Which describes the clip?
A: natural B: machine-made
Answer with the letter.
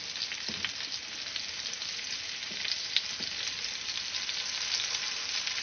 A